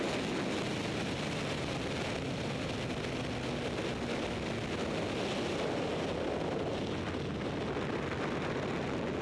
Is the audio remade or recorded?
recorded